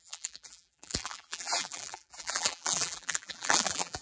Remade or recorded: remade